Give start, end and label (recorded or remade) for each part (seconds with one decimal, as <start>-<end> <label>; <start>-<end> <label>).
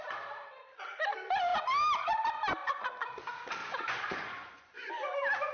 0.0-2.6 recorded; 2.6-3.1 remade; 3.1-3.6 recorded; 3.6-4.9 remade; 4.9-5.5 recorded